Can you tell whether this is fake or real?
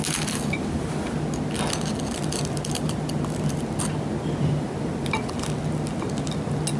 real